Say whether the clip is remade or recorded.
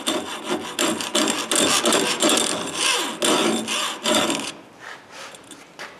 recorded